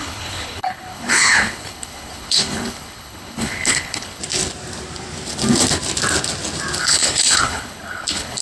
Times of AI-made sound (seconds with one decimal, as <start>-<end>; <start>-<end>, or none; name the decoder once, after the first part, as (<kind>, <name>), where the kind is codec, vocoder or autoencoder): 0.0-4.2 (codec, HILCodec); 6.8-8.4